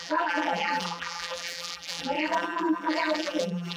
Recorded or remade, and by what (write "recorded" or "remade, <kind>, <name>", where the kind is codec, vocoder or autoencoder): remade, vocoder, BigVGAN v2